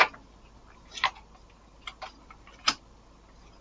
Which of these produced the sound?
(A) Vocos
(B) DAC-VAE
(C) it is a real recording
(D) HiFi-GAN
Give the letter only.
C